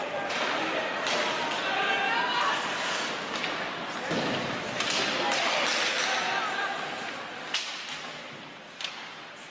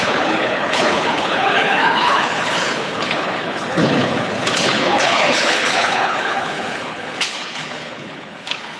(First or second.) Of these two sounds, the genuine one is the first